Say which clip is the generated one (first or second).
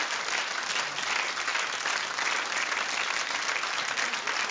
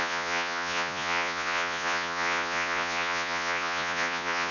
second